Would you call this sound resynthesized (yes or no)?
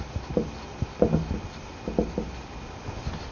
no